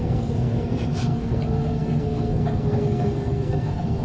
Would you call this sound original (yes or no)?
no